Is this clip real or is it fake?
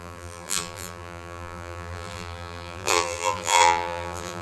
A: fake